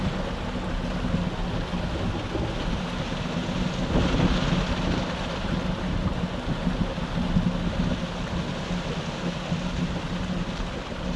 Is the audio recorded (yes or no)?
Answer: yes